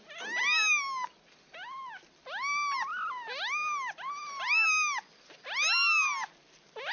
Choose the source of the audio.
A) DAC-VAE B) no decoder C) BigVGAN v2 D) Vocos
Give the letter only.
B